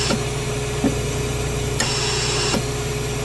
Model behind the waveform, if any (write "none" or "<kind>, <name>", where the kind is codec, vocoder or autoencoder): none